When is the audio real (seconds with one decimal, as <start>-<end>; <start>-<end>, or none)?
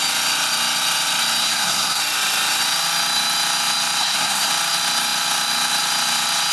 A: 0.0-1.4; 2.0-4.0; 4.5-6.5